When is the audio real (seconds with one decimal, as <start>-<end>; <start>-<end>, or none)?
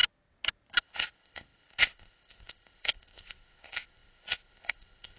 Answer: 0.0-0.8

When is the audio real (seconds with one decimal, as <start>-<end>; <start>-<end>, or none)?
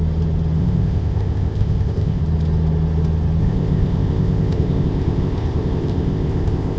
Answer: 0.0-0.6; 2.2-3.4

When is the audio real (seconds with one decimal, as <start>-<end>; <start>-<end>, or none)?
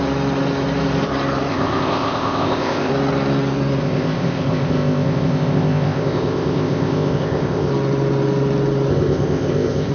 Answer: 0.0-1.5; 2.9-3.8; 7.7-8.9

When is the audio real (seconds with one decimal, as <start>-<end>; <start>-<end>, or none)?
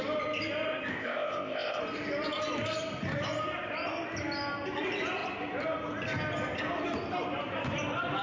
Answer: 0.0-0.9; 1.8-8.2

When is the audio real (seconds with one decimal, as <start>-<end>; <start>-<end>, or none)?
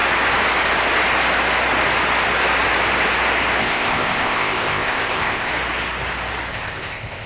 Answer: 0.0-3.6; 5.5-6.5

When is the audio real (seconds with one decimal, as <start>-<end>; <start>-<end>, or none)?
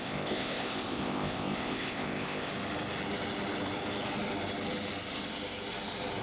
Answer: 2.5-6.2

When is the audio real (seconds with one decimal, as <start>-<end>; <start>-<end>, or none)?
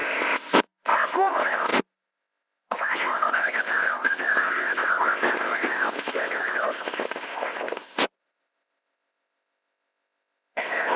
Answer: none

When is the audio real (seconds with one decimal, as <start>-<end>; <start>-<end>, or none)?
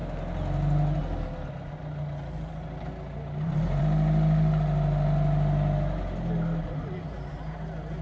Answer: 0.0-8.0